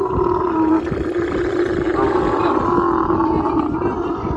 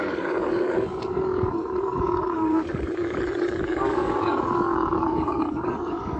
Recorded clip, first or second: first